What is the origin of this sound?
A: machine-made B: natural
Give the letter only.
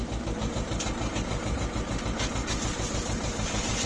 B